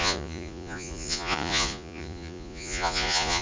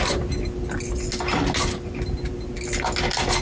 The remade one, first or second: first